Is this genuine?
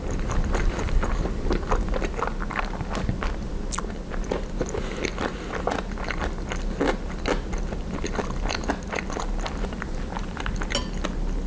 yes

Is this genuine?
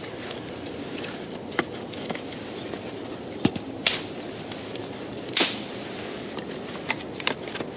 yes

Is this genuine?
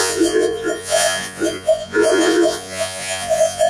no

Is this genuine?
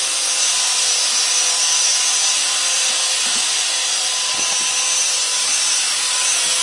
yes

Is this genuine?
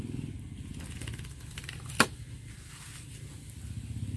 yes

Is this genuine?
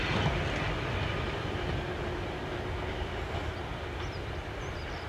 yes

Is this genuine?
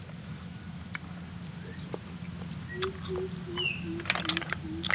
yes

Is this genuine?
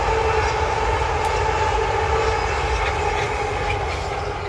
yes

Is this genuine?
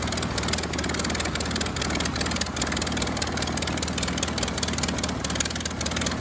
yes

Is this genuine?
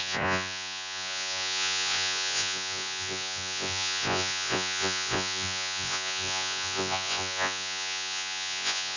no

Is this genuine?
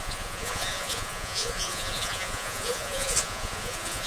no